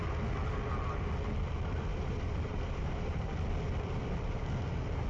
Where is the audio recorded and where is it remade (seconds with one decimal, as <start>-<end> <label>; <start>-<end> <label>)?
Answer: 0.0-1.9 recorded; 1.9-3.5 remade; 3.5-5.1 recorded

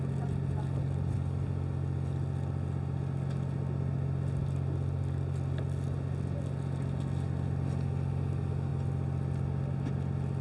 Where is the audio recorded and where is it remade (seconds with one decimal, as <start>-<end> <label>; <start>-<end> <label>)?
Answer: 0.0-10.4 recorded

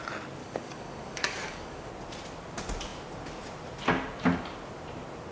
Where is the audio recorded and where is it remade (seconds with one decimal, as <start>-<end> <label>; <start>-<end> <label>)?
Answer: 0.0-0.4 recorded; 0.4-1.9 remade; 1.9-5.3 recorded

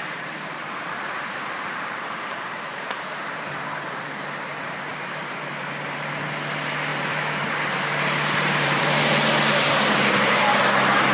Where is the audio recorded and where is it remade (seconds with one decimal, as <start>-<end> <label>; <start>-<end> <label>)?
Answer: 0.0-3.5 remade; 3.5-4.9 recorded; 4.9-6.1 remade; 6.1-6.9 recorded; 6.9-8.8 remade; 8.8-11.1 recorded

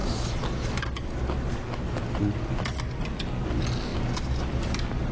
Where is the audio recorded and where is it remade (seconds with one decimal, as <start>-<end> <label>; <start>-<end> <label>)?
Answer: 0.0-5.1 recorded

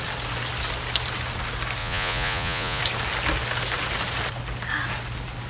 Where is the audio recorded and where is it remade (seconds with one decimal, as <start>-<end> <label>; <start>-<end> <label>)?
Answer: 0.0-1.8 recorded; 1.8-2.8 remade; 2.8-5.5 recorded

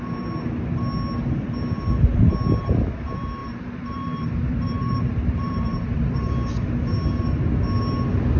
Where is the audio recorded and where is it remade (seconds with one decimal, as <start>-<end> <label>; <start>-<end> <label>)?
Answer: 0.0-3.4 recorded; 3.4-6.3 remade; 6.3-8.4 recorded